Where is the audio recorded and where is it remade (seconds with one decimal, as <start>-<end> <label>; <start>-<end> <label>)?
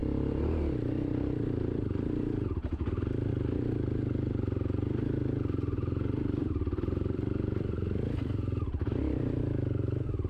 0.0-6.4 recorded; 6.4-9.4 remade; 9.4-10.3 recorded